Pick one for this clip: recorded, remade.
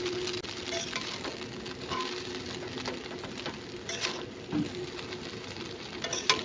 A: recorded